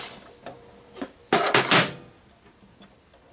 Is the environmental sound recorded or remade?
recorded